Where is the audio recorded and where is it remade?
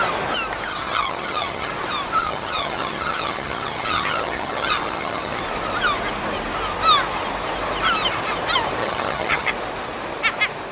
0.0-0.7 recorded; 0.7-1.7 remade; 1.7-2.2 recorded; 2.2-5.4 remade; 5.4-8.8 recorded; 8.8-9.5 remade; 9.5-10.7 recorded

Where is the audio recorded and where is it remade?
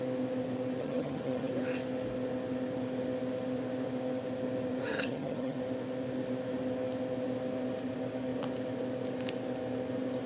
0.0-0.8 recorded; 0.8-1.5 remade; 1.5-4.9 recorded; 4.9-5.6 remade; 5.6-10.3 recorded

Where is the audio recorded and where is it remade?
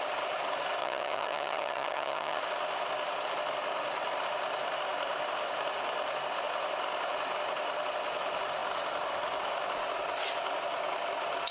0.0-0.8 recorded; 0.8-2.4 remade; 2.4-11.5 recorded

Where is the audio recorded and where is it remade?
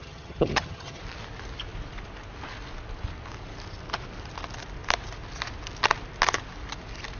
0.0-1.0 remade; 1.0-7.2 recorded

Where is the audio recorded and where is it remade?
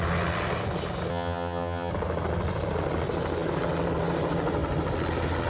0.0-1.1 recorded; 1.1-1.9 remade; 1.9-5.5 recorded